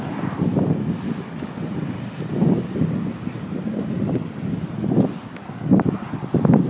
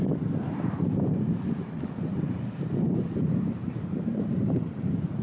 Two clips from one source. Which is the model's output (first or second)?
second